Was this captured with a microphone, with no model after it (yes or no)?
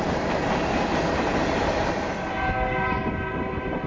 no